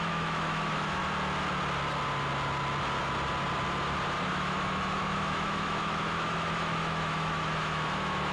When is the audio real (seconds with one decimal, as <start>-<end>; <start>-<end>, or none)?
1.0-4.3